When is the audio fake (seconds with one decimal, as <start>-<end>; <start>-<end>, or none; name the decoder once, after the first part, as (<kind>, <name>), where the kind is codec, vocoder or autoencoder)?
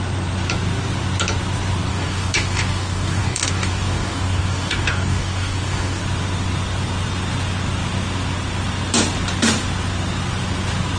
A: 1.9-6.0 (codec, DAC)